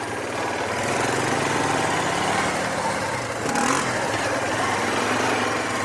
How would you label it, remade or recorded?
recorded